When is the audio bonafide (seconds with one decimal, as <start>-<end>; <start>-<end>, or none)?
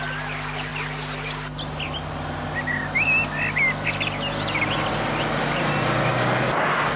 0.0-7.0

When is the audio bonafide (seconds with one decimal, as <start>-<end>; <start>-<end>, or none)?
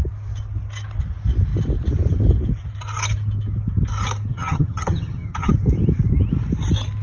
0.0-4.3; 5.5-7.0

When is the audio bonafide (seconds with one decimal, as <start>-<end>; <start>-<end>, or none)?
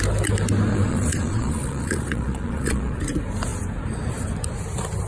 0.0-0.7; 3.0-5.1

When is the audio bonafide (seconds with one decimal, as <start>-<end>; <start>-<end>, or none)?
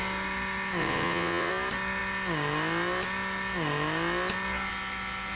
0.0-0.8; 1.5-5.4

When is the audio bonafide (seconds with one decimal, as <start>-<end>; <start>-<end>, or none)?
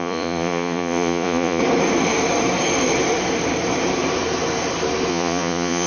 1.6-5.1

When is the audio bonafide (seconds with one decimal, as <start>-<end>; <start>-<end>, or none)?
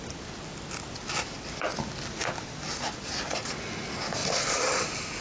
0.0-5.2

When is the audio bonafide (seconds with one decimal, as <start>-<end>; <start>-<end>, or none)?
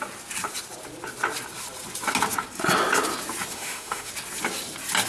0.0-3.5; 4.1-5.1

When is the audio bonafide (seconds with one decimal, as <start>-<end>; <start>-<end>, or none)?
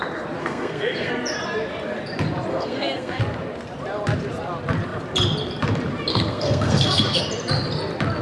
0.0-0.4; 1.1-2.5; 3.2-6.1; 7.2-8.2